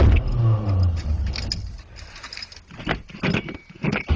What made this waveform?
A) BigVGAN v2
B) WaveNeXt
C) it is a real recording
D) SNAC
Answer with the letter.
C